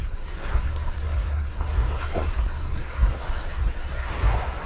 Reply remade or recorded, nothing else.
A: remade